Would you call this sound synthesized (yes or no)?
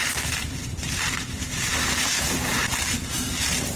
yes